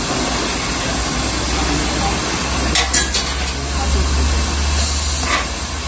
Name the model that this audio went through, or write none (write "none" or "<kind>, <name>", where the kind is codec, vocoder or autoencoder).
none